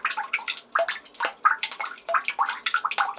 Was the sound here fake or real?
real